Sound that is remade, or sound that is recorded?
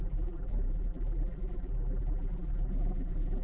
remade